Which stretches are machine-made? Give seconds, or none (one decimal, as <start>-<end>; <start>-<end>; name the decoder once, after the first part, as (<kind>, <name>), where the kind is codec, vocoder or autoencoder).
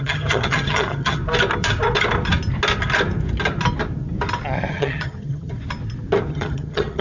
0.0-1.2 (vocoder, HiFi-GAN); 4.7-5.5; 6.3-7.0